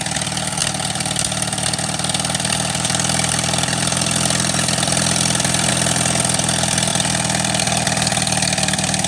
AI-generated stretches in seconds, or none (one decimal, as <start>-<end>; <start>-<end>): 0.6-5.7; 6.9-7.6